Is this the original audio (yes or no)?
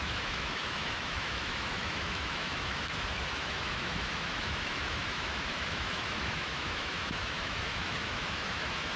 no